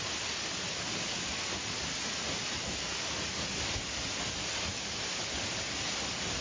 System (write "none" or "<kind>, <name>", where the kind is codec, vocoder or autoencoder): none